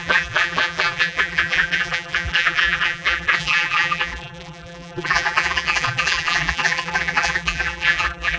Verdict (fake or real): fake